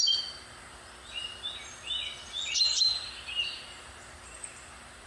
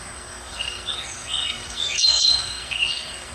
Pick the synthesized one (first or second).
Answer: second